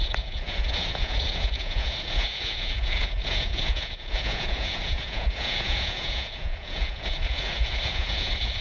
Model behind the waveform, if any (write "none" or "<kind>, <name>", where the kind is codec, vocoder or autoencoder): vocoder, Vocos